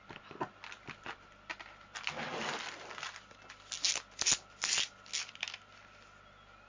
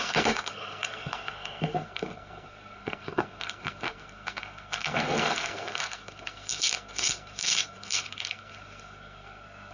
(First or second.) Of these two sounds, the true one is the first